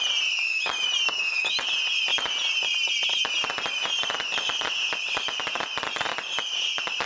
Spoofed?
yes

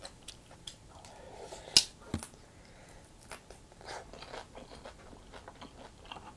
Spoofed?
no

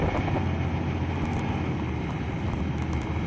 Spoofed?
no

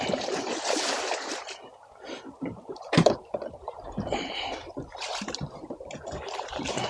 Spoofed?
yes